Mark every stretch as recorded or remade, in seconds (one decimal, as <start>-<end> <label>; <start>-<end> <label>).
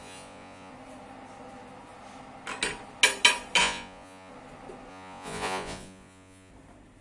0.0-0.7 remade; 0.7-3.6 recorded; 3.6-4.3 remade; 4.3-4.9 recorded; 4.9-6.5 remade; 6.5-7.0 recorded